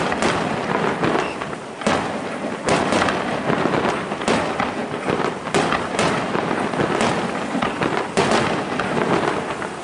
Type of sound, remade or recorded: recorded